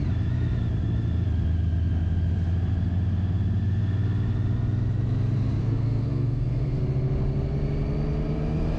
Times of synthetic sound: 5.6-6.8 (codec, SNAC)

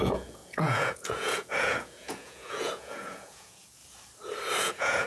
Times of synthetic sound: 0.0-3.8 (vocoder, Vocos); 4.6-5.1

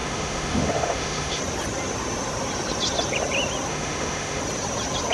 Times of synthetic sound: 0.0-1.4 (autoencoder, DAC-VAE); 3.7-4.4

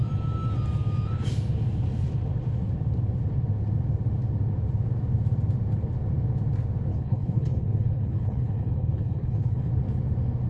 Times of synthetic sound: 6.9-9.7 (codec, HILCodec)

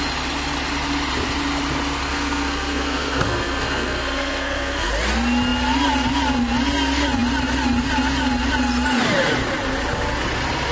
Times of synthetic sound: 2.1-4.9 (codec, SNAC)